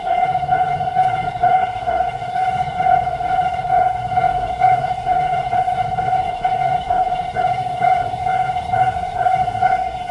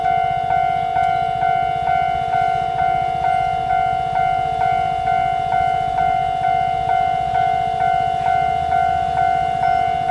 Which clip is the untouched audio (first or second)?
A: second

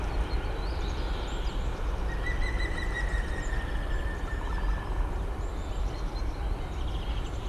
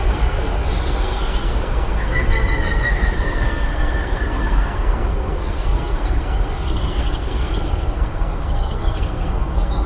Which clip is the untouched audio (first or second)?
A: first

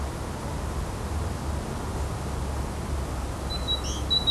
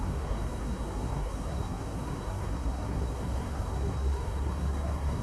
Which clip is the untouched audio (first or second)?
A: first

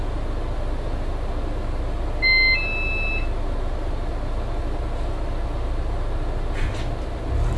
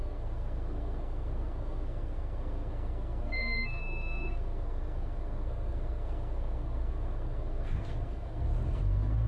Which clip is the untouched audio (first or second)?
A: first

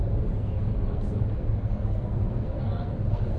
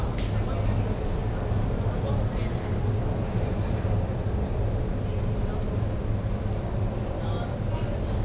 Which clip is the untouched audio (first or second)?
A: second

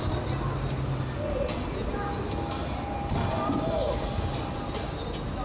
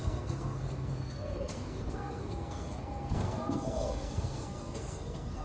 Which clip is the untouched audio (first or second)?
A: first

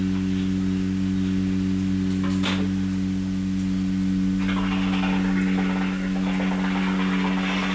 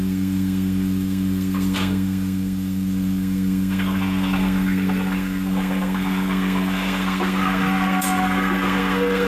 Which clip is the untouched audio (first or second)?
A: first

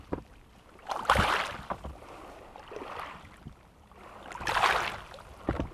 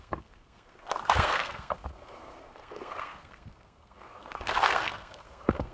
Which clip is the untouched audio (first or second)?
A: first